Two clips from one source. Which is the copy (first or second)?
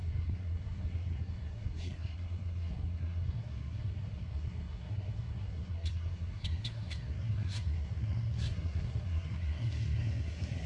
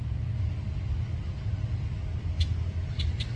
first